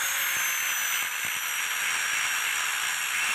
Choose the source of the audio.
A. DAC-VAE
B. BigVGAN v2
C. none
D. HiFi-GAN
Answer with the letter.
C